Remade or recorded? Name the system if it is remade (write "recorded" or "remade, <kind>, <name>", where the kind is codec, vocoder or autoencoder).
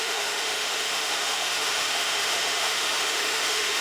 remade, autoencoder, DAC-VAE